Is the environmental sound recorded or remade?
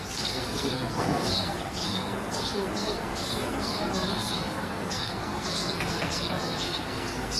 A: remade